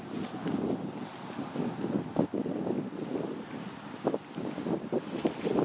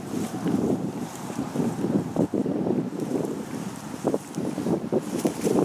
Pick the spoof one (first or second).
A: second